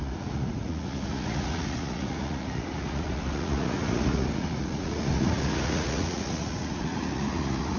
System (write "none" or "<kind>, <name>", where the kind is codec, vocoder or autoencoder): vocoder, Vocos